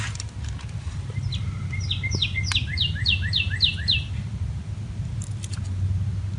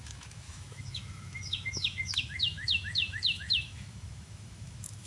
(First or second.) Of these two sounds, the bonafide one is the first